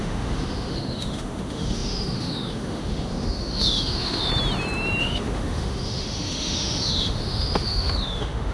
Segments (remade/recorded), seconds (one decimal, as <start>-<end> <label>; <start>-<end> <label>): 0.0-4.3 remade; 4.3-5.0 recorded; 5.0-8.5 remade